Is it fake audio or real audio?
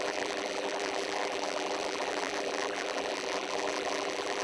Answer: fake